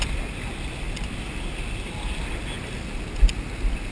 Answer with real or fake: real